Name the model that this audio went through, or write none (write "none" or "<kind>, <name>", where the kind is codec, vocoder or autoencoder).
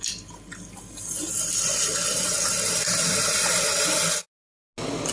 none